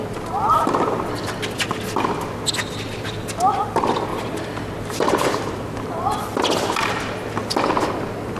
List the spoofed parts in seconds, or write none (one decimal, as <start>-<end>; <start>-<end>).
4.1-6.2